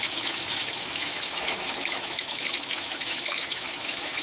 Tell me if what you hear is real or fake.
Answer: fake